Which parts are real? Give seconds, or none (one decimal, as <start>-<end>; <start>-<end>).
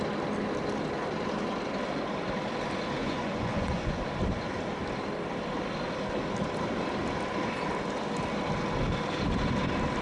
0.0-3.0; 4.0-10.0